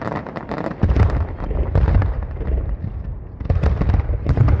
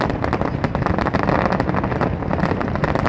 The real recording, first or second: second